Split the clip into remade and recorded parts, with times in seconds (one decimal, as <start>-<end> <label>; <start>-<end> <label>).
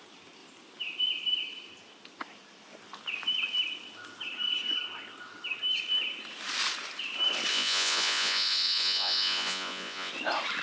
0.0-7.5 recorded; 7.5-10.1 remade; 10.1-10.6 recorded